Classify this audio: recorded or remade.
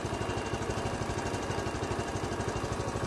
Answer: recorded